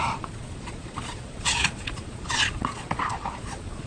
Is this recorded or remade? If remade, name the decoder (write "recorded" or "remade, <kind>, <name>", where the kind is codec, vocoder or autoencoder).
remade, vocoder, Vocos